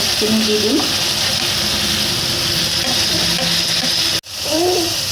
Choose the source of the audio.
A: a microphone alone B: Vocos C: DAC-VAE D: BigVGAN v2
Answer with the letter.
A